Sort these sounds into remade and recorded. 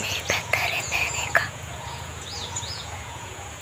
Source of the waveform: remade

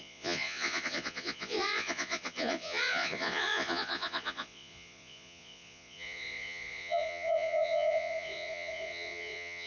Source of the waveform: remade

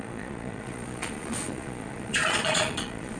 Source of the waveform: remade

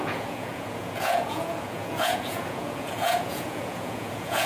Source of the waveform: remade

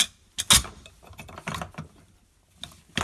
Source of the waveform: recorded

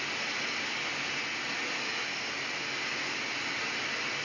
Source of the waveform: recorded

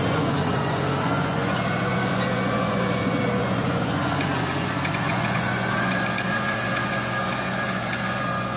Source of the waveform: remade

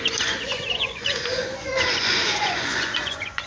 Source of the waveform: remade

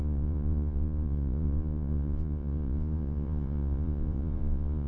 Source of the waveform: remade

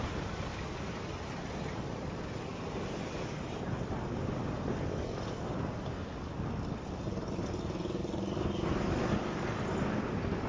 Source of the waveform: recorded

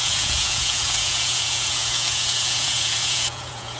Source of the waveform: remade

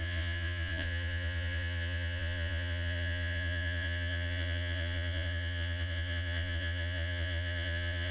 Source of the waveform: remade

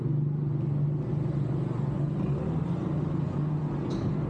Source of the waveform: recorded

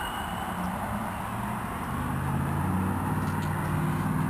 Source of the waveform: recorded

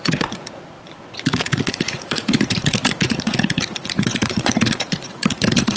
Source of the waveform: remade